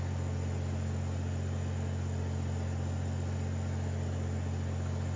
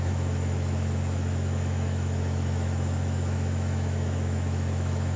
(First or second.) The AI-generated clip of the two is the second